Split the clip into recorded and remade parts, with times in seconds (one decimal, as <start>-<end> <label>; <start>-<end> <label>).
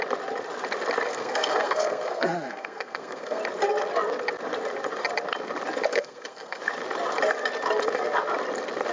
0.0-1.1 recorded; 1.1-3.4 remade; 3.4-5.9 recorded; 5.9-6.6 remade; 6.6-8.9 recorded